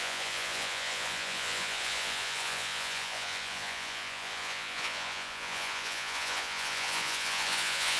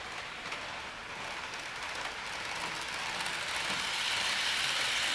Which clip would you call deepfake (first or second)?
first